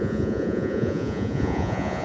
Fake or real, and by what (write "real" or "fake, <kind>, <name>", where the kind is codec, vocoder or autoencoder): fake, vocoder, Vocos